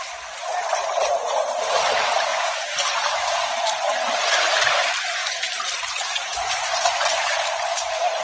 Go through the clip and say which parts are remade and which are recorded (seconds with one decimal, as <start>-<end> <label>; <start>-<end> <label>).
0.0-8.2 remade

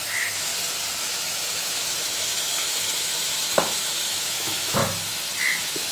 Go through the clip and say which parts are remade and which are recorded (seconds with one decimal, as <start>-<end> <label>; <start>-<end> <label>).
0.0-0.5 remade; 0.5-1.0 recorded; 1.0-4.8 remade; 4.8-5.4 recorded; 5.4-5.9 remade

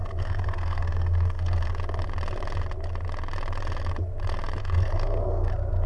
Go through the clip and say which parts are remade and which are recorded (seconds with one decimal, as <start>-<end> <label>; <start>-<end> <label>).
0.0-1.7 remade; 1.7-4.6 recorded; 4.6-5.5 remade; 5.5-5.9 recorded

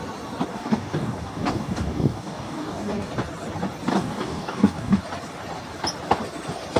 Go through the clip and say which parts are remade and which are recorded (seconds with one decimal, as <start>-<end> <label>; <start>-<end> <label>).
0.0-0.5 recorded; 0.5-3.1 remade; 3.1-3.9 recorded; 3.9-5.0 remade; 5.0-6.8 recorded

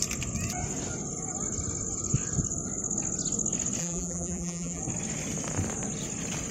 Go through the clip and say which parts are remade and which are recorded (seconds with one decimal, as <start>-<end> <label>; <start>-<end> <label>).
0.0-3.8 recorded; 3.8-4.8 remade; 4.8-6.5 recorded

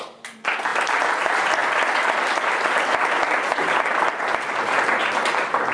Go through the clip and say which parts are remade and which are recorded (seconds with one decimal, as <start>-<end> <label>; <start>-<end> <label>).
0.0-5.7 recorded

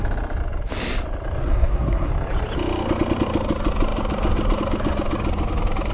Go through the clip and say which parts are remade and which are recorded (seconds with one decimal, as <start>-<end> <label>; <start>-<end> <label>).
0.0-1.4 recorded; 1.4-2.1 remade; 2.1-5.9 recorded